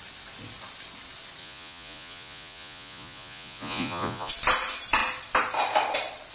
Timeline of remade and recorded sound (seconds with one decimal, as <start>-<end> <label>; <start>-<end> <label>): 0.0-1.4 recorded; 1.4-4.3 remade; 4.3-6.3 recorded